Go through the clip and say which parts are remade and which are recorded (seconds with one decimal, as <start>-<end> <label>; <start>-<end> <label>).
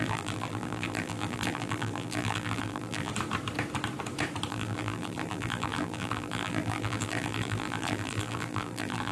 0.0-3.1 remade; 3.1-4.5 recorded; 4.5-9.1 remade